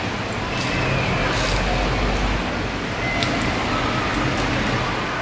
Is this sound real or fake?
real